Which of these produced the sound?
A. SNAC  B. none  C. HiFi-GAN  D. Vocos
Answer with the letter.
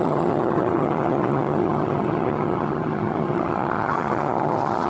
C